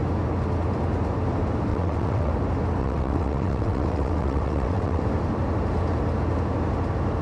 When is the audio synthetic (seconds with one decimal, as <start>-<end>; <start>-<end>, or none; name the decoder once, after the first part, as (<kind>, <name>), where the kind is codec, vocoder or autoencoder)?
1.7-2.3 (vocoder, WaveNeXt); 2.8-5.0